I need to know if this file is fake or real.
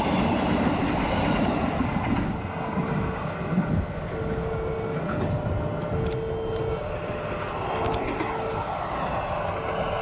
real